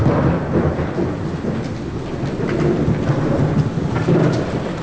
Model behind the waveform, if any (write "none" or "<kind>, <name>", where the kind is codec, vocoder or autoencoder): none